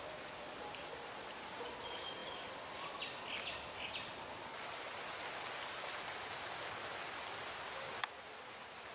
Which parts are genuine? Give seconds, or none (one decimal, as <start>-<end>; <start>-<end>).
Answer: 0.0-8.9